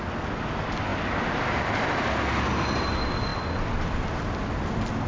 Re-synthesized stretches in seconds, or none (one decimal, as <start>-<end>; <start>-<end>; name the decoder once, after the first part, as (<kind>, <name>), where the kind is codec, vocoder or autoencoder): none